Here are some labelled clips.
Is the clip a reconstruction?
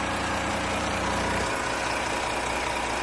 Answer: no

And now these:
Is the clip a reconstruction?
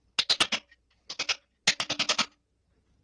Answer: no